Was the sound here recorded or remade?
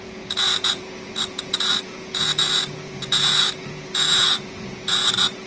remade